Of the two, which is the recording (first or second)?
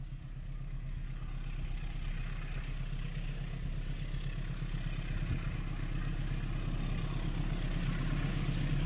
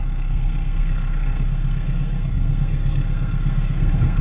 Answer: first